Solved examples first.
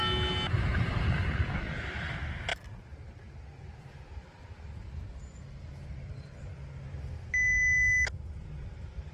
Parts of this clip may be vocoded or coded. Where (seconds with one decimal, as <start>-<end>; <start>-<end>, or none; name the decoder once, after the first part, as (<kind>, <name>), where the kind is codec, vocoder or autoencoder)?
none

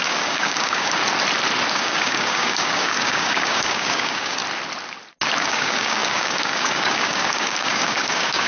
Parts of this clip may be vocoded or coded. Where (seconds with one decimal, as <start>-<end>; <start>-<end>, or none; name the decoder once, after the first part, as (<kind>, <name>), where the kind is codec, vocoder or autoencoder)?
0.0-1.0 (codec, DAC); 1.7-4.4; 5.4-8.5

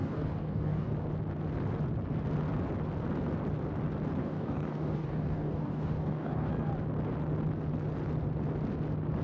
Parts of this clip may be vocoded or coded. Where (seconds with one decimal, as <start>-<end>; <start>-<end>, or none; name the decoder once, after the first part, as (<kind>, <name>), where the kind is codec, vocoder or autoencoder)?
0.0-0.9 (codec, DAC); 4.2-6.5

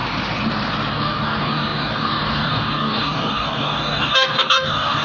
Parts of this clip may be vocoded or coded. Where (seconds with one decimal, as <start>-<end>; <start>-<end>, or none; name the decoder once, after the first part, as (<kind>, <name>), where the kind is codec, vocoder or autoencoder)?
0.9-5.0 (codec, DAC)

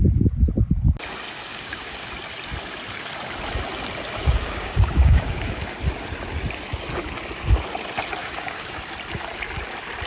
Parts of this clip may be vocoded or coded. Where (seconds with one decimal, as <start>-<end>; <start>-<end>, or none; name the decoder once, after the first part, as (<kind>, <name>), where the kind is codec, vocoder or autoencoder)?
1.5-2.1 (codec, DAC); 4.2-5.6; 8.2-8.7

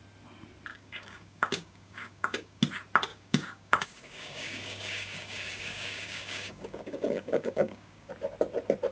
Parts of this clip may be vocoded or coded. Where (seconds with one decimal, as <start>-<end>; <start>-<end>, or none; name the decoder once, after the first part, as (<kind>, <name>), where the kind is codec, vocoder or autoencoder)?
0.7-2.6 (codec, DAC); 3.1-8.1